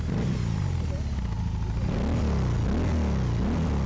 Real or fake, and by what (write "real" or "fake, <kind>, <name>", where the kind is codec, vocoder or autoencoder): real